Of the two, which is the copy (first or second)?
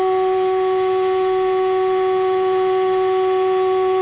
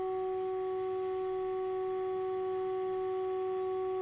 first